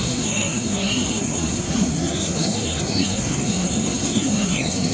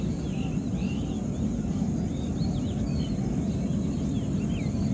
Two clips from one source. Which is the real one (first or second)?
second